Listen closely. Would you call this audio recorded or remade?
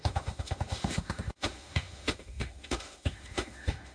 remade